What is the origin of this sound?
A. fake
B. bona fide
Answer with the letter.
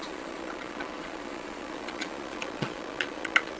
A